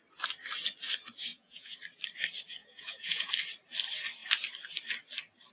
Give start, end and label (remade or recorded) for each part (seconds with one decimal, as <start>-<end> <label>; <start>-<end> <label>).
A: 0.0-1.3 recorded; 1.3-1.8 remade; 1.8-2.6 recorded; 2.6-3.3 remade; 3.3-5.5 recorded